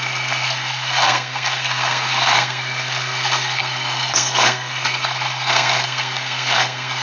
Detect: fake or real fake